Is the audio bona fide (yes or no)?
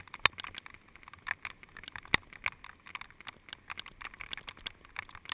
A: yes